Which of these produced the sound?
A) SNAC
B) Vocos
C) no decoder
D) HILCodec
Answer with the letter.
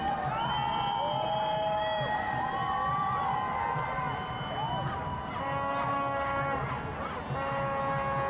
C